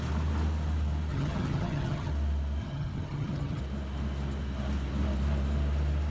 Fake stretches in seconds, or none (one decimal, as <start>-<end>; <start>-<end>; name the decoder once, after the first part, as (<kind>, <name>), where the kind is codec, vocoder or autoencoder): 1.1-2.1 (vocoder, HiFi-GAN); 2.6-3.6